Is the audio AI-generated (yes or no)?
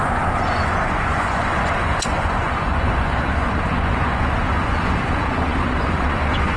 yes